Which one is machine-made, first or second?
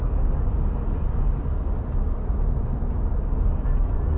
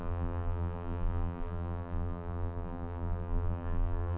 second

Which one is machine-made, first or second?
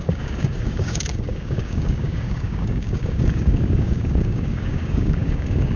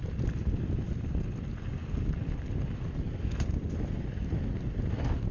first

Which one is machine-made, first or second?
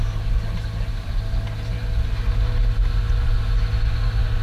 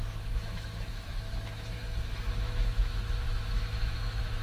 second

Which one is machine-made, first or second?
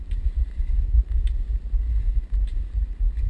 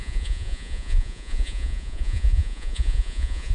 second